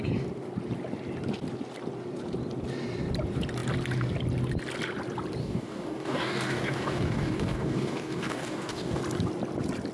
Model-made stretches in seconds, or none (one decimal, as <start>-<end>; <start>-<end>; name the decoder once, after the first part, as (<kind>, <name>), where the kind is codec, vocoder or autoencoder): 5.4-9.0 (codec, DAC)